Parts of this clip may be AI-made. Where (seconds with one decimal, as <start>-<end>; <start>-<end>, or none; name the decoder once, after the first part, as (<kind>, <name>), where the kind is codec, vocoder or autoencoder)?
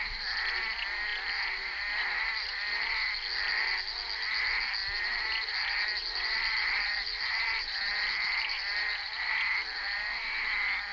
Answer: 1.1-3.1 (vocoder, BigVGAN v2); 4.8-9.3